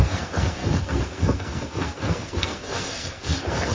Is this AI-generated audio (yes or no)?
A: yes